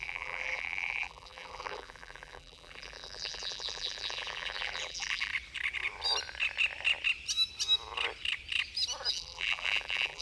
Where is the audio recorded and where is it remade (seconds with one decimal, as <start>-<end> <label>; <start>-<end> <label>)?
0.0-5.3 remade; 5.3-9.1 recorded; 9.1-10.2 remade